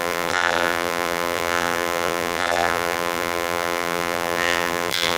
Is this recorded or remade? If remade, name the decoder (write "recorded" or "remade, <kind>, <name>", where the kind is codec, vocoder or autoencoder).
remade, vocoder, BigVGAN v2